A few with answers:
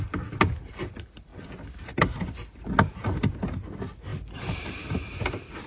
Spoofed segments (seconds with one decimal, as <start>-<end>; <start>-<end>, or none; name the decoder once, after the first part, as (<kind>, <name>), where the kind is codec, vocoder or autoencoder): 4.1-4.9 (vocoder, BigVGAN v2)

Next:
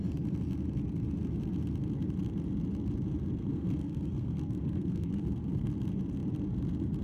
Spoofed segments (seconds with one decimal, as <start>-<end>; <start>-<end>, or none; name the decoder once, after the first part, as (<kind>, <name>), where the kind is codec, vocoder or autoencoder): 3.4-5.7 (codec, SNAC)

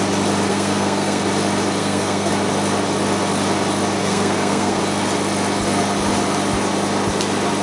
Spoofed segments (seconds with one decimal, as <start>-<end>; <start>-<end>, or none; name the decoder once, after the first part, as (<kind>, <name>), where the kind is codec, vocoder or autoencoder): 0.5-1.2 (codec, SNAC); 1.8-2.3; 4.0-4.8

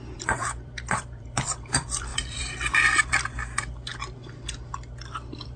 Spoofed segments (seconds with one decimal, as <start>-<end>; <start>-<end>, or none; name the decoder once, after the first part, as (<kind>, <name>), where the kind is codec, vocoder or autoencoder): 0.0-3.9 (vocoder, BigVGAN v2); 4.7-5.6